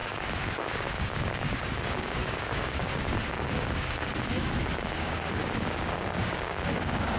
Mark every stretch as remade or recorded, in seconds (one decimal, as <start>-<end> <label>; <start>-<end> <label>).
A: 0.0-7.2 remade

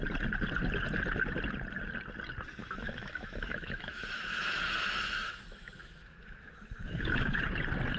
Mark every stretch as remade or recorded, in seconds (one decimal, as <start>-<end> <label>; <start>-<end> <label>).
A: 0.0-2.6 recorded; 2.6-7.4 remade; 7.4-8.0 recorded